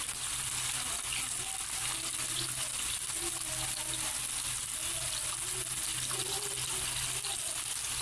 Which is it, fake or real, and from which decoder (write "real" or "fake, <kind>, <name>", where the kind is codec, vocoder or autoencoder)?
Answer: real